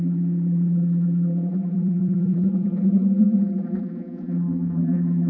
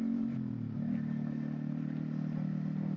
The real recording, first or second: second